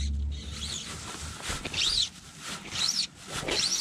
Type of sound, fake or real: real